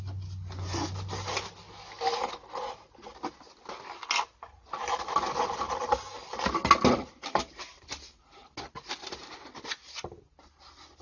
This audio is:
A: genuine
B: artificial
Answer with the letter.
A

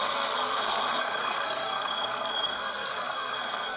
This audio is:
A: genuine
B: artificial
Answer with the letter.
B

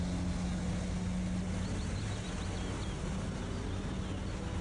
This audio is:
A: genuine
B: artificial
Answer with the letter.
A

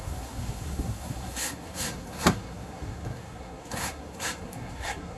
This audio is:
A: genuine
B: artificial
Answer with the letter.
B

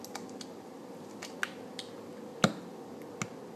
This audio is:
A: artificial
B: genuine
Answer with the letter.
B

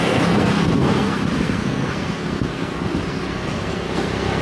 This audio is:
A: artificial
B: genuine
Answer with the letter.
A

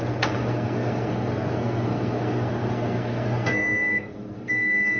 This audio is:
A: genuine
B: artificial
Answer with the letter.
B